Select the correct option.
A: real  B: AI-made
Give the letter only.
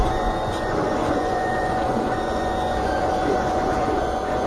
B